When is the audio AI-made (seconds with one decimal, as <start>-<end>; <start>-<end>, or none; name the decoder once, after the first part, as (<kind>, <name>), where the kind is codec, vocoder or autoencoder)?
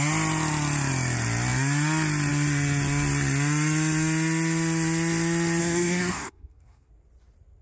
5.6-6.9 (codec, SNAC)